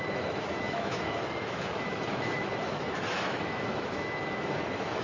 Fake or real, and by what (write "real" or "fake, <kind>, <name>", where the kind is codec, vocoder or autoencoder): fake, autoencoder, DAC-VAE